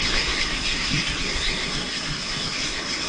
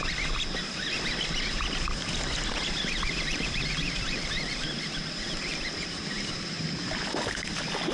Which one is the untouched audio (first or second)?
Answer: second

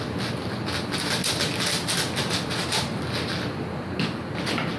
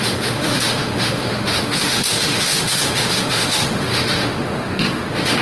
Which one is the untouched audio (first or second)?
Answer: first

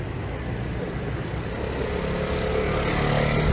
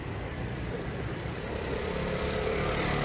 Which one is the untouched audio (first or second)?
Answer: first